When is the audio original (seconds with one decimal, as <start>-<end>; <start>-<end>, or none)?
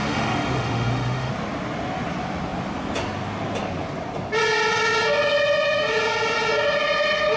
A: 1.3-7.4